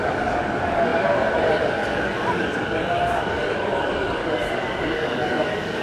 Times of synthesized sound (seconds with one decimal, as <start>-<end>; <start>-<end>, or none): 0.0-5.8